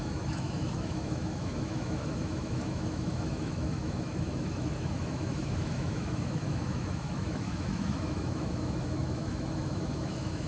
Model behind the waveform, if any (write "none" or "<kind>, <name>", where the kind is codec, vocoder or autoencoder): autoencoder, DAC-VAE